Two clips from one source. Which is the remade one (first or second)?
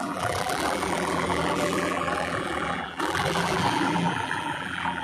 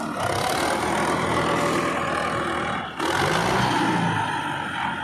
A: first